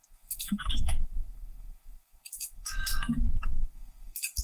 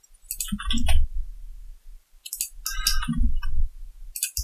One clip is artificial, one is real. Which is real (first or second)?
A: second